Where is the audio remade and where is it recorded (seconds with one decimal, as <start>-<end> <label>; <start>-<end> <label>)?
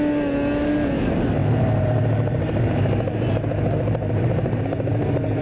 0.0-1.4 recorded; 1.4-4.6 remade; 4.6-5.4 recorded